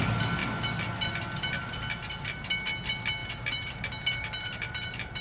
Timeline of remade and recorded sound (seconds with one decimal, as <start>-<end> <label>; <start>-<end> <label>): 0.0-3.2 recorded; 3.2-5.2 remade